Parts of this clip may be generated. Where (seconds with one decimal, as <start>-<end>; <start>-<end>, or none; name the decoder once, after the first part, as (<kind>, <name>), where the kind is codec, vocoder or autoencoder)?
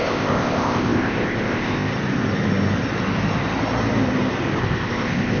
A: 0.0-1.9 (codec, ZipCodec); 4.6-5.4